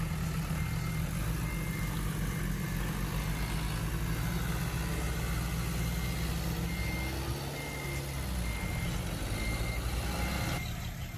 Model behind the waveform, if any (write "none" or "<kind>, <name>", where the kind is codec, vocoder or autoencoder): none